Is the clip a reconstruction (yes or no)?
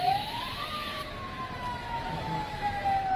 yes